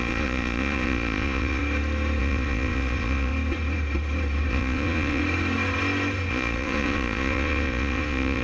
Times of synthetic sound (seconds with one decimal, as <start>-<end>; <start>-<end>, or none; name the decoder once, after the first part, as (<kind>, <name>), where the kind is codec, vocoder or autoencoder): 0.0-1.6 (vocoder, Vocos); 2.2-3.3; 4.5-5.2; 6.3-8.4